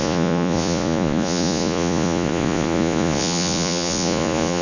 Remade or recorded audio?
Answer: remade